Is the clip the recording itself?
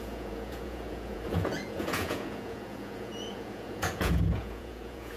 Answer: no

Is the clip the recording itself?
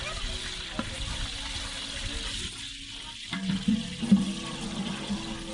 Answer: yes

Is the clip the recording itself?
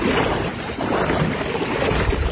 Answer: yes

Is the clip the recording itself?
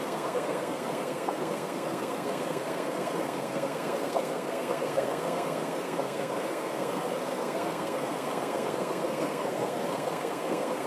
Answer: no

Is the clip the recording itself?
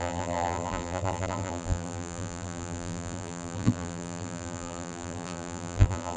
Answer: no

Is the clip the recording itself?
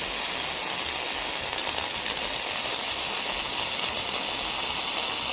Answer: yes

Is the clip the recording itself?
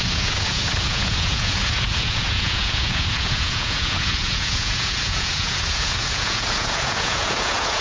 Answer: no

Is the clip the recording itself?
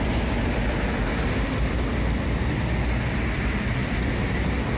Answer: yes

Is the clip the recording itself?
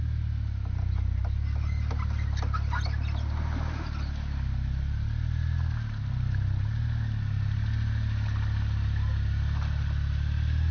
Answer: yes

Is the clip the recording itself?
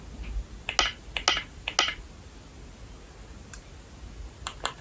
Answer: yes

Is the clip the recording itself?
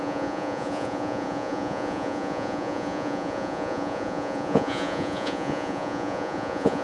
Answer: no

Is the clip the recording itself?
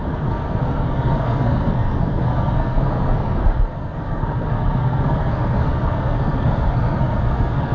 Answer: no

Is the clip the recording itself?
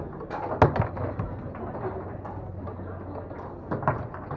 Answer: yes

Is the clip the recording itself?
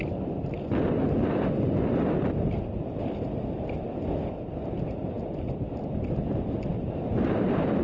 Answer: yes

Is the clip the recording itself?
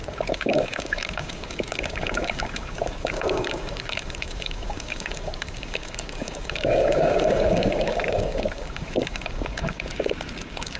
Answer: no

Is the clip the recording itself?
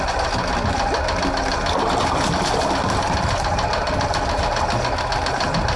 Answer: yes